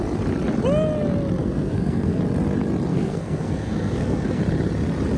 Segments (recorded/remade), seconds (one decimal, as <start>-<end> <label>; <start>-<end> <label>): 0.0-1.4 recorded; 1.4-2.2 remade; 2.2-2.9 recorded; 2.9-4.4 remade; 4.4-5.2 recorded